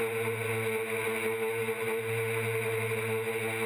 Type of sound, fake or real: real